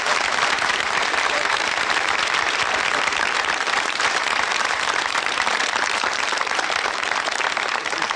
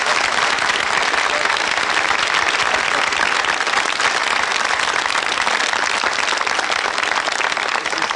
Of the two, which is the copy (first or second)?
first